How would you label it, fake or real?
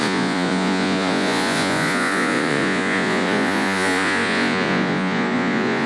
fake